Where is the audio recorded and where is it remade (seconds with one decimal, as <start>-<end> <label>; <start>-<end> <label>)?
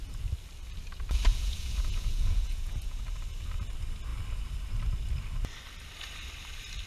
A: 0.0-1.3 recorded; 1.3-3.0 remade; 3.0-6.9 recorded